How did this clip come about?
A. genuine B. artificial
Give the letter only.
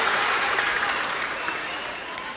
B